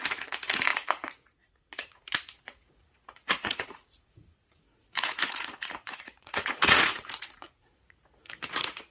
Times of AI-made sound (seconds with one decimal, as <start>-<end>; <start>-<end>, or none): 0.0-8.9